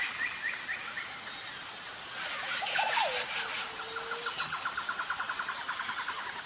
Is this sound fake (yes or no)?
no